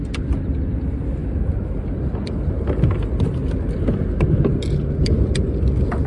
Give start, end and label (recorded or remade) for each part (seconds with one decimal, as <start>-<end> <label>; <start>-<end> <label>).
0.0-6.1 recorded